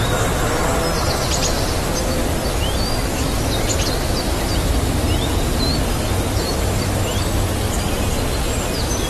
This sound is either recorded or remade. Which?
recorded